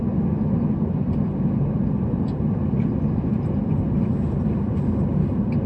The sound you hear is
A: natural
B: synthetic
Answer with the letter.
A